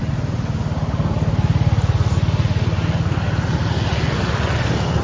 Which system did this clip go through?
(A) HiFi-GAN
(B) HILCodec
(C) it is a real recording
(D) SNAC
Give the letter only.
C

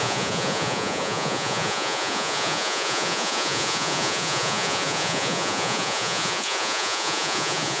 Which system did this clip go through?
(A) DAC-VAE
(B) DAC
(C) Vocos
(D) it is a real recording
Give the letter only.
C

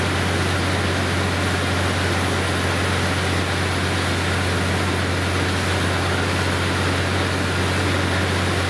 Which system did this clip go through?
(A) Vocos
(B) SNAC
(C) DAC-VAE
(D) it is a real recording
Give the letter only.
D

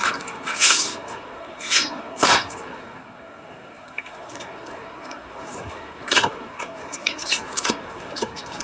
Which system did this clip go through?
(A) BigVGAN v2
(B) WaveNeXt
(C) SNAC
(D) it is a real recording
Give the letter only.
C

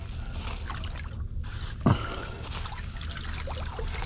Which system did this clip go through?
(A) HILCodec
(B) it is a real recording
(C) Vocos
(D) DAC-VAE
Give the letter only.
B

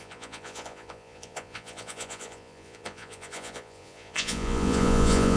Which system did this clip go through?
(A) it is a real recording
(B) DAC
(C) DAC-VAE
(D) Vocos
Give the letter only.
D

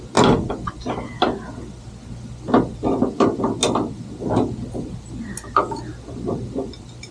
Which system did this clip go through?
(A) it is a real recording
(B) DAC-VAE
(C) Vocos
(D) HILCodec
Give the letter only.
A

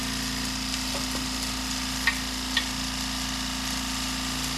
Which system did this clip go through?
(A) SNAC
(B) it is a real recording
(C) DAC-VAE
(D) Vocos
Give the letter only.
B